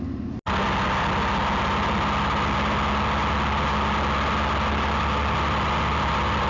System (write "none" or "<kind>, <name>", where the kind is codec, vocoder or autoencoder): none